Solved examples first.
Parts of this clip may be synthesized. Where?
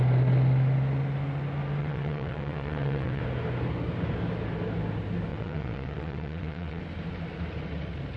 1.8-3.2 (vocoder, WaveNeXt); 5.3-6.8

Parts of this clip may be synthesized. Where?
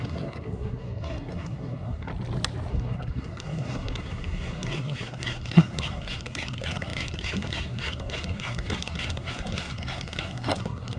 0.0-2.1 (codec, SNAC); 2.7-11.0